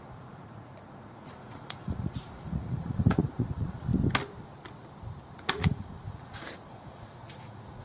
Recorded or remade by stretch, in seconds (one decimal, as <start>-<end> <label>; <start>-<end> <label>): 0.0-3.9 remade; 3.9-5.3 recorded; 5.3-7.8 remade